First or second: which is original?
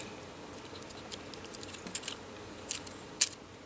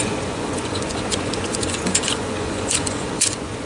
first